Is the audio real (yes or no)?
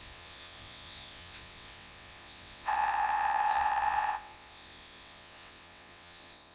no